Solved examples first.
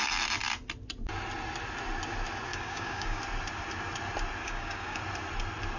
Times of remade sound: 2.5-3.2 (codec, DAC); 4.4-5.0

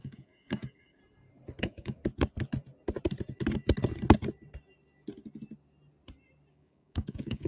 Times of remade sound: 0.0-1.0 (codec, DAC); 1.6-2.0; 6.5-7.5

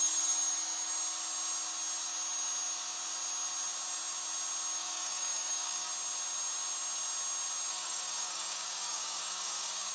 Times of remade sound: 4.8-5.9 (codec, DAC); 7.7-9.9